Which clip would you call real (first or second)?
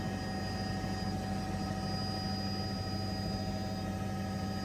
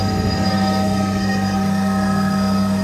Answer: first